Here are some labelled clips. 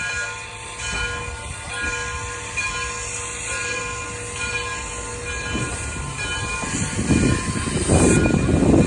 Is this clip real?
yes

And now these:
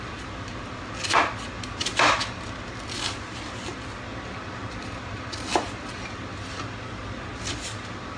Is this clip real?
yes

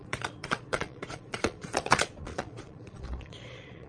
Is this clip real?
no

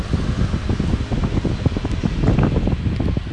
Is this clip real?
yes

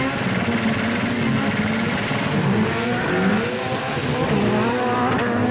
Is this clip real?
yes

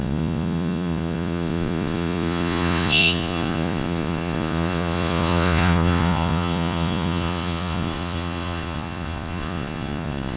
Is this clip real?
no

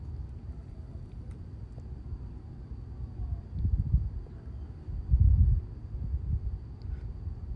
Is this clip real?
yes